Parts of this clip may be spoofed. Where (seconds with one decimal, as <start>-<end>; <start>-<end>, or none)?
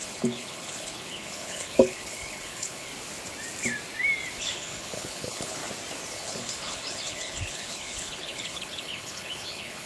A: 0.0-2.9; 4.4-5.6; 6.1-9.9